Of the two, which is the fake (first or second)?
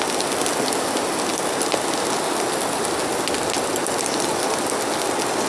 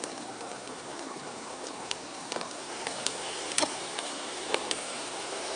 second